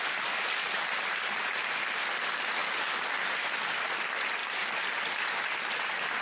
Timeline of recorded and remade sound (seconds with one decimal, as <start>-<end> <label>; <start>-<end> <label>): 0.0-0.6 recorded; 0.6-1.4 remade; 1.4-4.4 recorded; 4.4-5.7 remade; 5.7-6.2 recorded

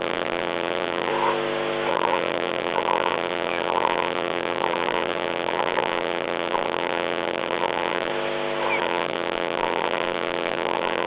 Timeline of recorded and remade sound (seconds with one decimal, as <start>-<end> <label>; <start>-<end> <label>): 0.0-1.1 remade; 1.1-1.9 recorded; 1.9-8.1 remade; 8.1-8.8 recorded; 8.8-11.1 remade

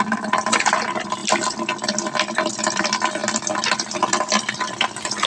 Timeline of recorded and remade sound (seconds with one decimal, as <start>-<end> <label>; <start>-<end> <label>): 0.0-1.2 recorded; 1.2-2.8 remade; 2.8-3.2 recorded; 3.2-4.0 remade; 4.0-5.3 recorded

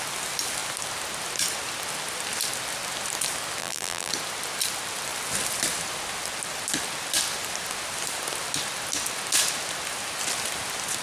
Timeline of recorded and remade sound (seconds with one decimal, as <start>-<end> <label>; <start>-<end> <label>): 0.0-3.6 recorded; 3.6-4.1 remade; 4.1-11.0 recorded

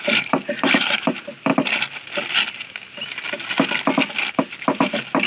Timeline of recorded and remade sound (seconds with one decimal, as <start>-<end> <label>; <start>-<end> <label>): 0.0-1.5 remade; 1.5-4.3 recorded; 4.3-5.3 remade